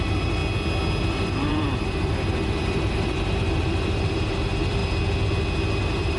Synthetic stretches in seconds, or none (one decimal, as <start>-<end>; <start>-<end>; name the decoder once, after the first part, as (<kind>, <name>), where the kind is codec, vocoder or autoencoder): 0.0-0.4 (vocoder, BigVGAN v2); 1.0-4.8; 5.8-6.2

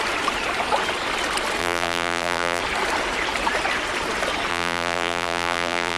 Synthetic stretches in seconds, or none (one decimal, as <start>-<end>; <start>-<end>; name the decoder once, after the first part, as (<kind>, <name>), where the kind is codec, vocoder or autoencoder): 1.6-2.6 (vocoder, BigVGAN v2); 4.5-6.0

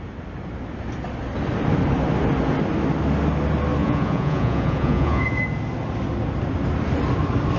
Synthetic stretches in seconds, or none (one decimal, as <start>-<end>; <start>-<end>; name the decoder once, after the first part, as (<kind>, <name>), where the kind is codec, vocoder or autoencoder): 3.8-5.4 (vocoder, Vocos)

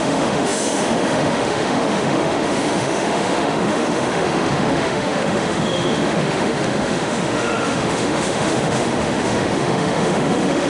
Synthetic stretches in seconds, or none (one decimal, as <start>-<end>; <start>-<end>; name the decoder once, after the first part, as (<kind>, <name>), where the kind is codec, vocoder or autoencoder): 0.0-10.7 (autoencoder, DAC-VAE)

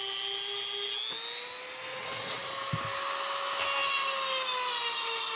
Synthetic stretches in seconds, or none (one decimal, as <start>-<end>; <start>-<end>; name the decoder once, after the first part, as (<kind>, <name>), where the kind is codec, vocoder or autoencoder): 1.9-2.5 (vocoder, WaveNeXt)

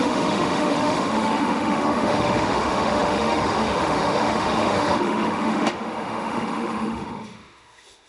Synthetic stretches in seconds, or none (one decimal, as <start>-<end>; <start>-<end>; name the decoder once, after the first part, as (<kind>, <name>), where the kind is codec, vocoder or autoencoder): 0.0-8.1 (autoencoder, DAC-VAE)